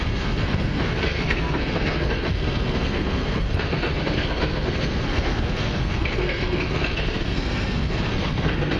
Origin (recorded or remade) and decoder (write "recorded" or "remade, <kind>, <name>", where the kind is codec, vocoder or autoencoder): remade, codec, SNAC